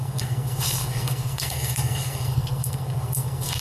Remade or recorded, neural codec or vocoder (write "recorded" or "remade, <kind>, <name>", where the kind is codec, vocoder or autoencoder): remade, codec, SNAC